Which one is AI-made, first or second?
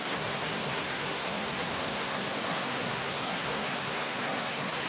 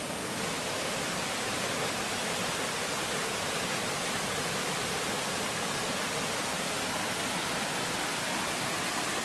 first